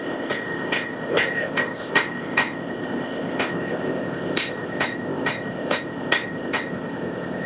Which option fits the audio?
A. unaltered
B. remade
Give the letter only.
B